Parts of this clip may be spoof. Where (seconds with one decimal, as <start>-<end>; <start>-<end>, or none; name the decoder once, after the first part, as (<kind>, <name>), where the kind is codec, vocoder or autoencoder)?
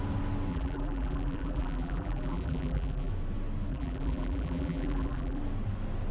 0.5-3.1 (vocoder, BigVGAN v2); 3.7-5.4